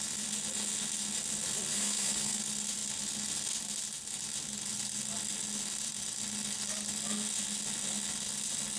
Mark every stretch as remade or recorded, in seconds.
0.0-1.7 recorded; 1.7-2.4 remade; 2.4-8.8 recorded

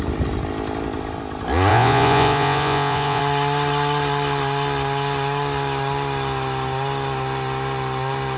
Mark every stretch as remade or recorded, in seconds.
0.0-1.7 recorded; 1.7-3.2 remade; 3.2-8.4 recorded

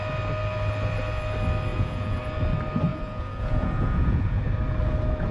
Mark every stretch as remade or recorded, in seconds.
0.0-1.7 recorded; 1.7-2.2 remade; 2.2-2.9 recorded; 2.9-4.4 remade; 4.4-5.3 recorded

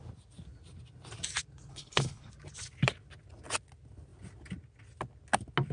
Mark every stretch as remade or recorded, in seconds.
0.0-1.7 recorded; 1.7-2.3 remade; 2.3-5.7 recorded

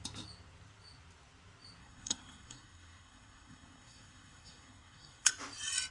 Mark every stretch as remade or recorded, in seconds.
0.0-1.8 recorded; 1.8-5.3 remade; 5.3-5.9 recorded

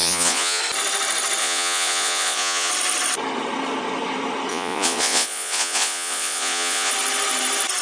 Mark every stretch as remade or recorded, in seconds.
0.0-0.6 remade; 0.6-1.4 recorded; 1.4-2.7 remade; 2.7-4.5 recorded; 4.5-6.9 remade; 6.9-7.8 recorded